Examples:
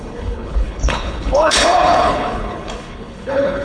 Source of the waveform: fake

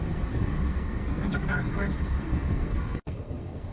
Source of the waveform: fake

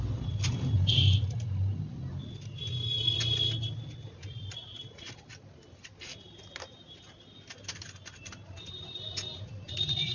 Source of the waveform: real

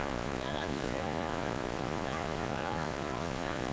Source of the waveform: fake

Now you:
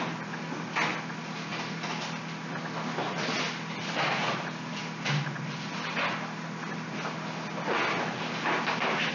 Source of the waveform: real